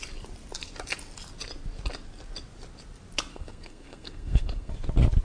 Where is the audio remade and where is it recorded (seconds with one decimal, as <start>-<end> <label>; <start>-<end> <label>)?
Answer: 0.0-3.3 recorded; 3.3-4.7 remade; 4.7-5.2 recorded